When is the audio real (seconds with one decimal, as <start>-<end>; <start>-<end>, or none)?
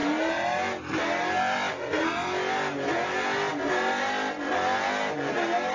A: 0.0-5.7